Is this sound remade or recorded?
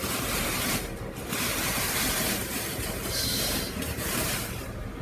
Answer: remade